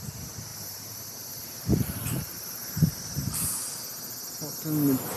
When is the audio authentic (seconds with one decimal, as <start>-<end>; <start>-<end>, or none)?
0.0-0.5; 3.5-5.2